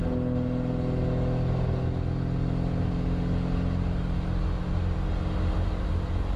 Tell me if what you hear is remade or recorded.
recorded